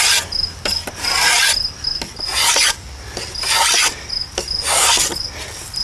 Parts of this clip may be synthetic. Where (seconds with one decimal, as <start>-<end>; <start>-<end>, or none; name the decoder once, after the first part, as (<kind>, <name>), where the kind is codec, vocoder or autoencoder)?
none